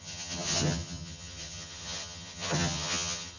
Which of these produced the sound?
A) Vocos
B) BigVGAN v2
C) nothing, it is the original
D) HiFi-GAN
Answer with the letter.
D